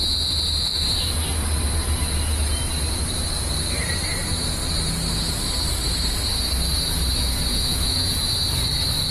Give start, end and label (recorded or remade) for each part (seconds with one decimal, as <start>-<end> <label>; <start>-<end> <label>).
0.0-7.5 recorded; 7.5-8.3 remade; 8.3-9.1 recorded